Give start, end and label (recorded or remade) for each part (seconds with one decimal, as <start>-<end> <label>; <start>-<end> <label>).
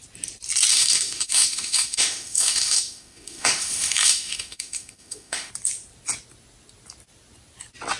0.0-0.7 recorded; 0.7-5.5 remade; 5.5-8.0 recorded